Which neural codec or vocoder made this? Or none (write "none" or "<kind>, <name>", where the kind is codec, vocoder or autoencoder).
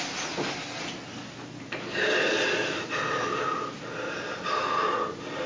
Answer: none